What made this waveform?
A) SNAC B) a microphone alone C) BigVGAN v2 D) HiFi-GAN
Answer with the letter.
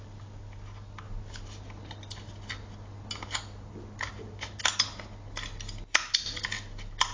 B